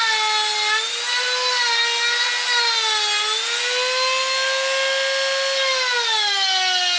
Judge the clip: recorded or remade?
recorded